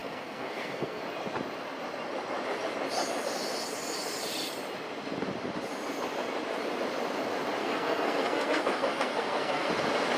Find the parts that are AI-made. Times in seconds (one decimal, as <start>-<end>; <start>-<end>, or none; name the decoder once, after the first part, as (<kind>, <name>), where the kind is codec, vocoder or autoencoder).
0.0-1.0 (codec, SNAC); 7.6-9.7